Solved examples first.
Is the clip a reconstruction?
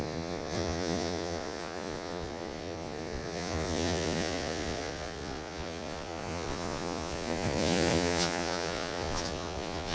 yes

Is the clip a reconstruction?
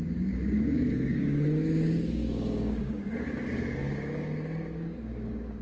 yes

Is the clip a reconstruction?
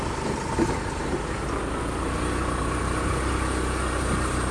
no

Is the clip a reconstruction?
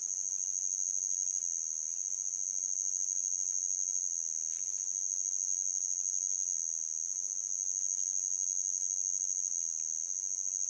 no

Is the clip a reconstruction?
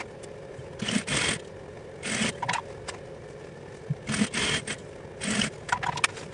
no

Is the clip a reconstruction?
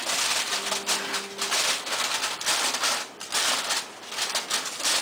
no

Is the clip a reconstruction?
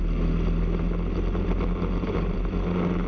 no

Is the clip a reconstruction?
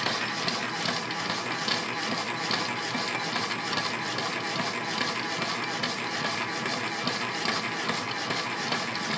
no